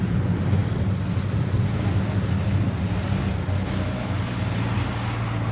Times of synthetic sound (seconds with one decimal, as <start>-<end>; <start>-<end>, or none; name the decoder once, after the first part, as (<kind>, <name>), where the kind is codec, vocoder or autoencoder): none